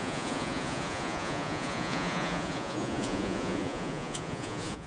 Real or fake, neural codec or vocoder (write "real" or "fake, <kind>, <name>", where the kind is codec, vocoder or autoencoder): fake, vocoder, Vocos